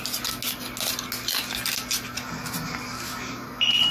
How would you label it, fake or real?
real